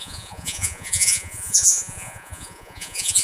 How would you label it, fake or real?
fake